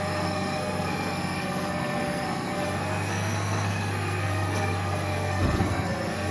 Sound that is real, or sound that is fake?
fake